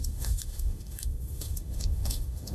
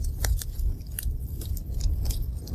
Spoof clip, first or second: first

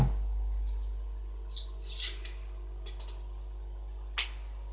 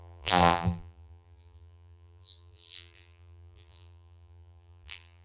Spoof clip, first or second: second